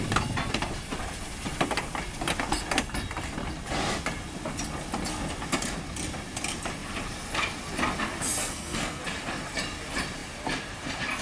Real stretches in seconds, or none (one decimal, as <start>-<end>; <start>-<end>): 0.0-8.4; 9.0-11.2